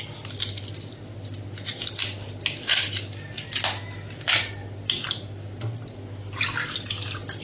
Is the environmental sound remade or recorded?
recorded